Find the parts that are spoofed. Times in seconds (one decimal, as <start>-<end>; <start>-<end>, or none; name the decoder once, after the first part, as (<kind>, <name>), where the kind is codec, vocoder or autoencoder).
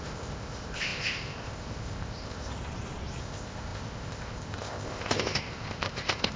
0.0-2.5 (codec, ZipCodec); 3.2-6.4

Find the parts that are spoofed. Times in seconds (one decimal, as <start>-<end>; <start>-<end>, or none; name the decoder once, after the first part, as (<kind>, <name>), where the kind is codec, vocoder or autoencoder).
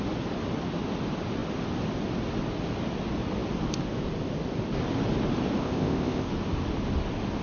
5.6-6.3 (codec, ZipCodec)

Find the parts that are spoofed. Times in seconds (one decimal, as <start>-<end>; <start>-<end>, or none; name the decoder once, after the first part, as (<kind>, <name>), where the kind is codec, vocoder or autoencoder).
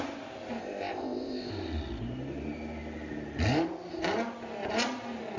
0.6-1.5 (codec, ZipCodec)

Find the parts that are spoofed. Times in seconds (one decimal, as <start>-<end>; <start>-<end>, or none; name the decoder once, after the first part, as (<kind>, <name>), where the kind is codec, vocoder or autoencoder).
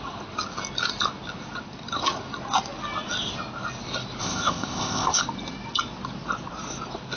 4.2-5.2 (codec, ZipCodec)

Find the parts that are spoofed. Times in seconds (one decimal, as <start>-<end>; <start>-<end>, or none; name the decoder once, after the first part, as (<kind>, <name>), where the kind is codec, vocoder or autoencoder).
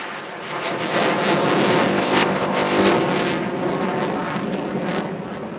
1.9-2.9 (codec, ZipCodec)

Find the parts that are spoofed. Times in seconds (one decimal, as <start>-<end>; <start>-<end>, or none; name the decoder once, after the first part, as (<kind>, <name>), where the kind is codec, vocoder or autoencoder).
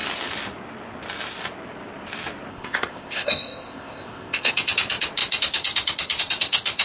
2.5-4.7 (codec, ZipCodec)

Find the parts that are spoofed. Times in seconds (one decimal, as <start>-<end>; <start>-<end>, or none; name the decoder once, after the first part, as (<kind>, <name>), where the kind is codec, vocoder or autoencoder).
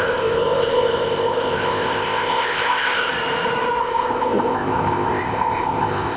0.0-3.1 (codec, ZipCodec); 3.8-6.2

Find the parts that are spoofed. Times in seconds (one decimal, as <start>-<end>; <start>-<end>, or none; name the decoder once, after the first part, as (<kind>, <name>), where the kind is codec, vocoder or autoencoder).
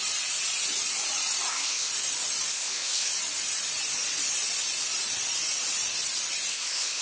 1.5-1.9 (codec, ZipCodec); 2.5-3.1; 6.5-7.0